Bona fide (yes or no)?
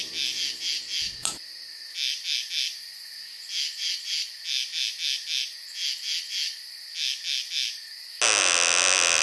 yes